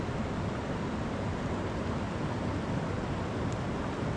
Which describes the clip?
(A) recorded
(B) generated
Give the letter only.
A